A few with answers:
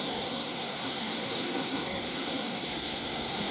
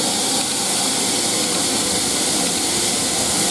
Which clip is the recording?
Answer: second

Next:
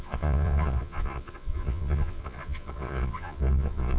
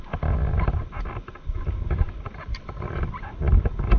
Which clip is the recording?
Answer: second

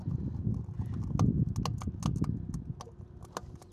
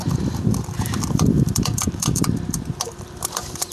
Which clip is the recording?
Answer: first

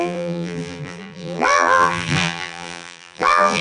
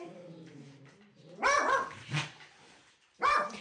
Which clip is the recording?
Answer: second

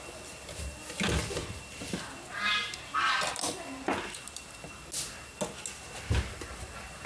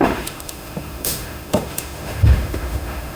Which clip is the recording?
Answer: first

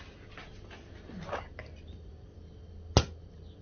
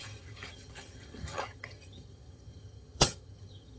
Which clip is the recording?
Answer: first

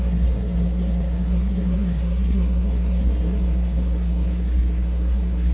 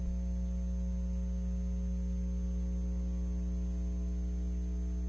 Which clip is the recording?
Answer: second